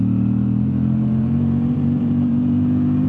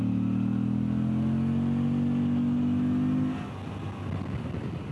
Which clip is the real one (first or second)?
second